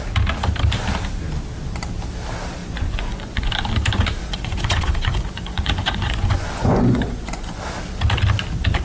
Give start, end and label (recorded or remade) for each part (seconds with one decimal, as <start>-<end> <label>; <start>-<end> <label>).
0.0-2.6 recorded; 2.6-3.5 remade; 3.5-4.2 recorded; 4.2-7.6 remade; 7.6-8.8 recorded